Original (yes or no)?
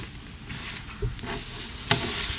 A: yes